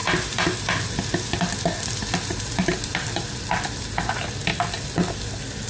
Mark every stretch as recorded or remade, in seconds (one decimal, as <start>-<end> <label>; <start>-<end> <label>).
0.0-5.7 recorded